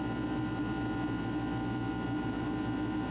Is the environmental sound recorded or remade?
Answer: recorded